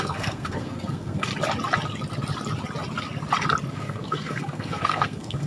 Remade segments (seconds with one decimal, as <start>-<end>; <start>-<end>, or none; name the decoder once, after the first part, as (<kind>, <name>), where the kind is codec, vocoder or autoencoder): 0.0-1.3 (codec, SNAC); 3.7-5.5